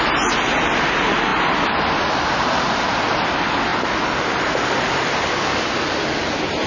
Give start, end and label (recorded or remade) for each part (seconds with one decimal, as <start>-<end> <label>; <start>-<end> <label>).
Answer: 0.0-6.7 recorded